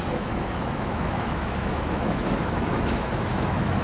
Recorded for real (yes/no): no